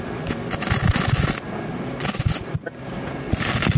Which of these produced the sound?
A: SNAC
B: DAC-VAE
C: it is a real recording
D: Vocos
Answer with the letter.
C